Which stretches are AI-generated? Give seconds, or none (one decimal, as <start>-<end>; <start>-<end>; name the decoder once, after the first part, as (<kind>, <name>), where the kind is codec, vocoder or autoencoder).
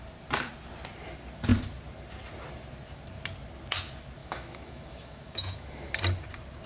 4.2-5.9 (autoencoder, DAC-VAE)